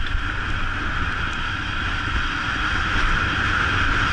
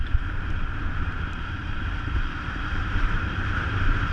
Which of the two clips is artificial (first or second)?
second